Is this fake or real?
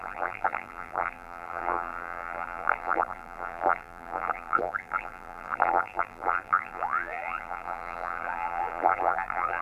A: fake